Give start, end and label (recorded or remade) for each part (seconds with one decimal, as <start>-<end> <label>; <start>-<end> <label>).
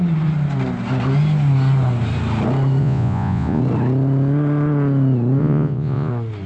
0.0-2.8 recorded; 2.8-3.6 remade; 3.6-5.4 recorded; 5.4-6.1 remade; 6.1-6.5 recorded